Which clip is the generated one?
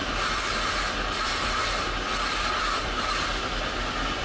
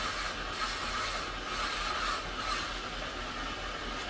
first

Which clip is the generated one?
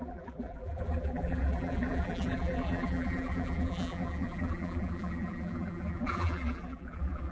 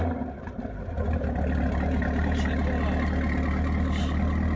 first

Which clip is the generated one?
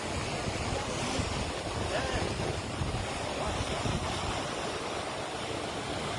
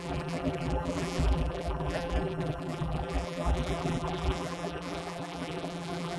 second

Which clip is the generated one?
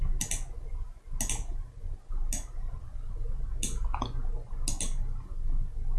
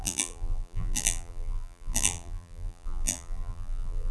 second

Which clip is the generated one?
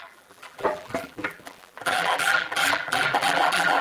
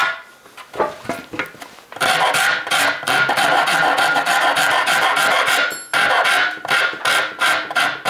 first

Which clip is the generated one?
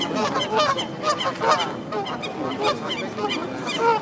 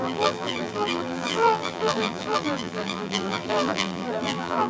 second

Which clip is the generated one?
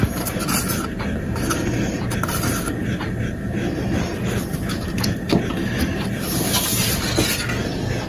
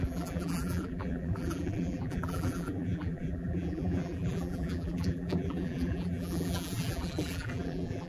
second